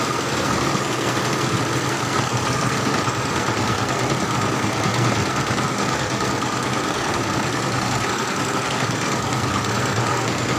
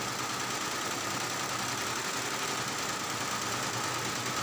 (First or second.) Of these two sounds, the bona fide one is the second